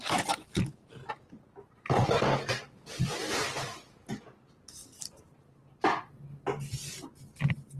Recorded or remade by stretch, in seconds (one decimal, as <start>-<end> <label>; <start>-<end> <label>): 0.0-4.8 recorded; 4.8-5.9 remade; 5.9-7.8 recorded